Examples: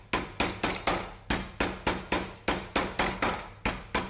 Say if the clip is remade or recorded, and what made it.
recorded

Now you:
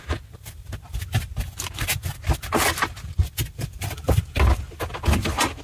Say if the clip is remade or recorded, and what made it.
recorded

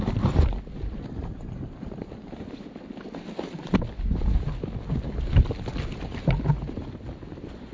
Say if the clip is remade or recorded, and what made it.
recorded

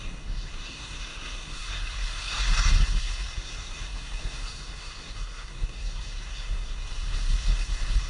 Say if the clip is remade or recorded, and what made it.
remade, codec, SNAC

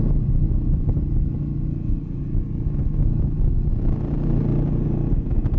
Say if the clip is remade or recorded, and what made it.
recorded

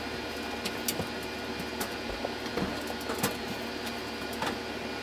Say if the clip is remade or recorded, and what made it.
recorded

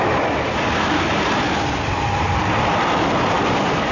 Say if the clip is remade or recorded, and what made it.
recorded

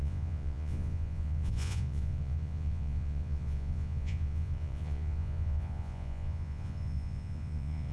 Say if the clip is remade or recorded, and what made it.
remade, vocoder, Vocos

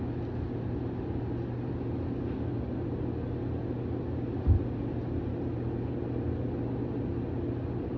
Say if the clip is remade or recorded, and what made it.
recorded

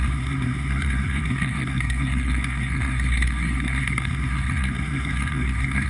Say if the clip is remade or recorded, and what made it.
remade, codec, SNAC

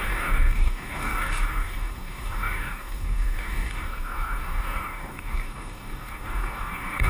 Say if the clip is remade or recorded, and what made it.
remade, codec, DAC